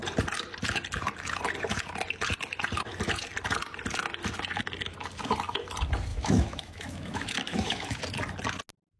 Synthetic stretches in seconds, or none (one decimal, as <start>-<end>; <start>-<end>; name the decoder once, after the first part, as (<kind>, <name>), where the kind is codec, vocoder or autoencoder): 6.1-8.0 (autoencoder, DAC-VAE)